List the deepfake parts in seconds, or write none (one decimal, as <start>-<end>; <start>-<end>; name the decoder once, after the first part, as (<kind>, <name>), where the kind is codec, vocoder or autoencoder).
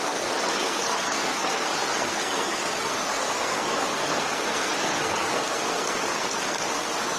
0.0-7.2 (codec, SNAC)